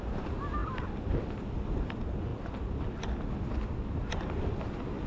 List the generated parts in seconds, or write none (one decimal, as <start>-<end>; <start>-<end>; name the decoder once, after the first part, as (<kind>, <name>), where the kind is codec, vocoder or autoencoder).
0.6-1.2 (vocoder, BigVGAN v2)